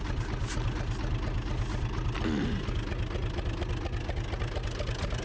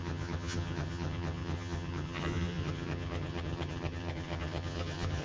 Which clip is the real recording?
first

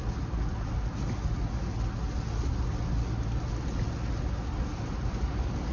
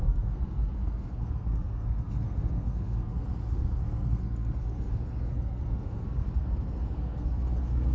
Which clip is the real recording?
first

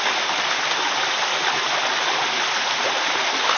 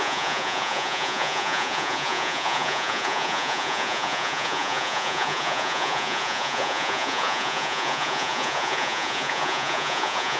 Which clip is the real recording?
first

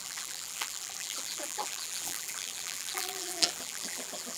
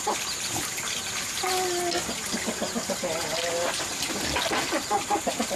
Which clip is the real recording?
second